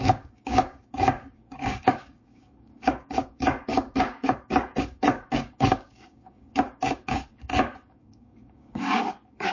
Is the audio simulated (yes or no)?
yes